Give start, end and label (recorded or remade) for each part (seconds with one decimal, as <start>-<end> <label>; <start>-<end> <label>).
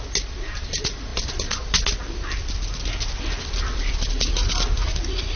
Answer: 0.0-5.4 recorded